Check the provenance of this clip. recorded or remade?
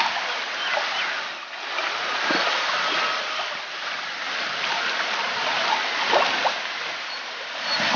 recorded